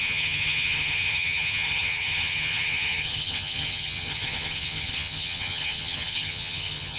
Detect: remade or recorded remade